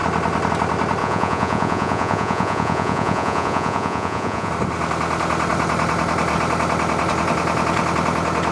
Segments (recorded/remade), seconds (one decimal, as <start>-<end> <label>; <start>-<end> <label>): 0.0-1.0 recorded; 1.0-4.5 remade; 4.5-8.5 recorded